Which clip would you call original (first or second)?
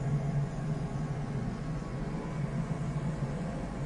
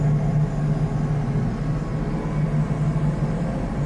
second